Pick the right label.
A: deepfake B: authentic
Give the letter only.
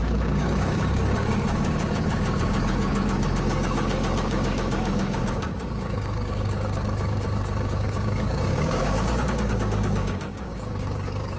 A